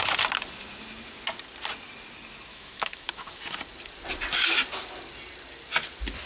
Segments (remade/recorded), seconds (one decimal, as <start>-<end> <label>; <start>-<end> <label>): 0.0-2.5 recorded; 2.5-3.4 remade; 3.4-6.3 recorded